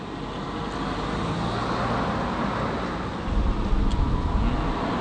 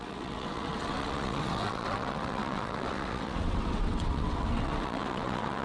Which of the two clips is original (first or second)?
first